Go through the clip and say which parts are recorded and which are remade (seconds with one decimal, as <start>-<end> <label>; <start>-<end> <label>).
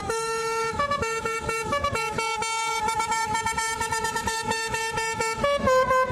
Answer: 0.0-6.1 remade